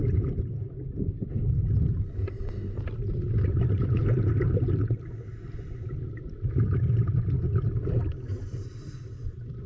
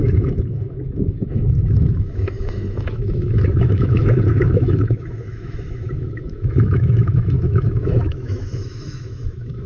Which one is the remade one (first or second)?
second